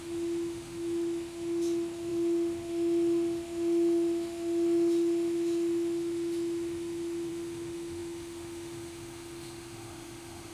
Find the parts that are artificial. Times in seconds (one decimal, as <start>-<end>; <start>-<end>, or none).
0.0-10.5